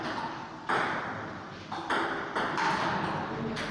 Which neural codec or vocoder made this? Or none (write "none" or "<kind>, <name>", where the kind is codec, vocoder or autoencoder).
none